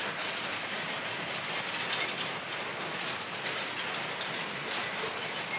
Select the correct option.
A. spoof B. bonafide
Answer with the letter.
B